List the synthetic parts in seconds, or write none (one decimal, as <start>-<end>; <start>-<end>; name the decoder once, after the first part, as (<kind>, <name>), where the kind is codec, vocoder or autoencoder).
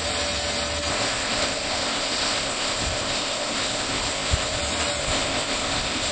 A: 0.9-4.6 (codec, ZipCodec); 5.0-6.1